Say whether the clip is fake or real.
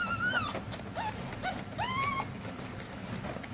real